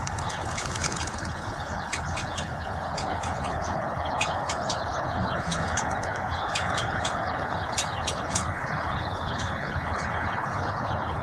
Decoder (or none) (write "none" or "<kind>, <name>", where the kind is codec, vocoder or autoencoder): codec, HILCodec